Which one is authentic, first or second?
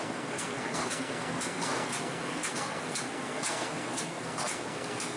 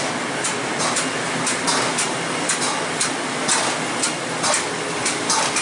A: second